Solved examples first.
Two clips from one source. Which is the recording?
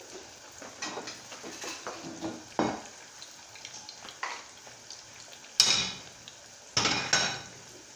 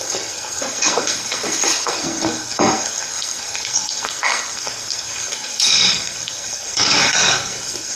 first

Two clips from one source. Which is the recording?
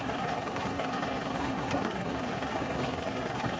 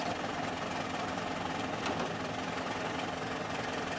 second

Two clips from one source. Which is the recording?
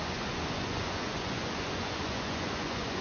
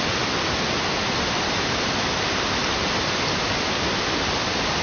second